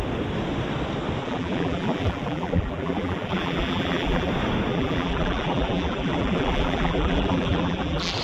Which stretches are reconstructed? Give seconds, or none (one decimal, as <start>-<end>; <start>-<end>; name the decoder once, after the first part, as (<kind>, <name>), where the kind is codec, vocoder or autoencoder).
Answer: 1.2-4.3 (vocoder, BigVGAN v2); 4.7-8.2